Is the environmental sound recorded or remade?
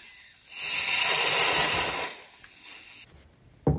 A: recorded